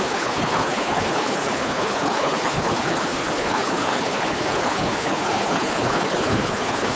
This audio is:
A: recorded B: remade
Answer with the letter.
B